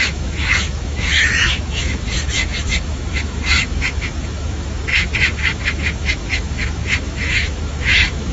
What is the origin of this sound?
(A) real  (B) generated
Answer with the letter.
B